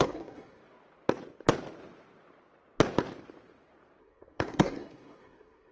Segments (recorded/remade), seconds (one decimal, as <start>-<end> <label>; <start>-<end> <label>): 0.0-0.6 remade; 0.6-4.0 recorded; 4.0-5.7 remade

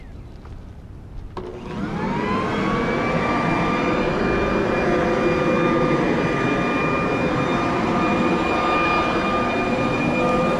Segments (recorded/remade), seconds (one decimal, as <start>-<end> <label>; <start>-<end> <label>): 0.0-10.6 recorded

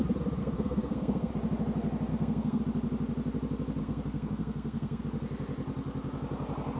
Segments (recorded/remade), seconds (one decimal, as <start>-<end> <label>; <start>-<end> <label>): 0.0-0.4 recorded; 0.4-1.3 remade; 1.3-2.1 recorded; 2.1-2.6 remade; 2.6-3.8 recorded; 3.8-5.0 remade; 5.0-6.8 recorded

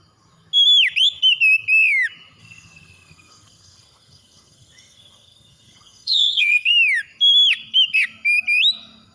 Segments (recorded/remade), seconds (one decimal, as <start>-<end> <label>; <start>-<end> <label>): 0.0-2.4 recorded; 2.4-6.7 remade; 6.7-9.1 recorded

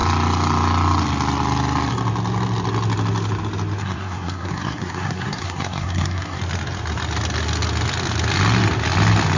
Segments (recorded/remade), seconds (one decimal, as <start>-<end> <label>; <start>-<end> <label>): 0.0-3.8 recorded; 3.8-6.4 remade; 6.4-9.4 recorded